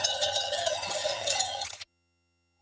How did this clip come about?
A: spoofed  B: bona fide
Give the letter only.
A